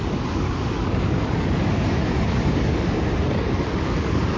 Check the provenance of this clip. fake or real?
fake